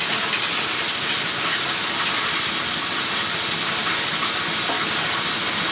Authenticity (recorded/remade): recorded